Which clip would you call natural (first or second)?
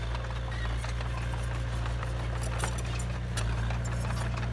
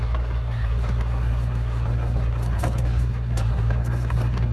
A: first